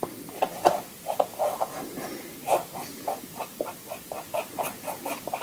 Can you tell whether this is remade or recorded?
recorded